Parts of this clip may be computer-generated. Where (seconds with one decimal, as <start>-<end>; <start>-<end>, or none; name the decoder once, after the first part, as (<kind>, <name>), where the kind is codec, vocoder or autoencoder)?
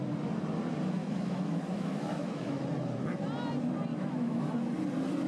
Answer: 1.0-2.6 (autoencoder, DAC-VAE); 3.9-4.4